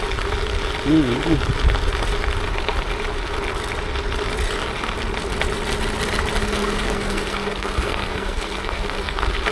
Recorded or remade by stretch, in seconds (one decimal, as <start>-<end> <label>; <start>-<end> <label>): 0.0-6.4 recorded; 6.4-9.5 remade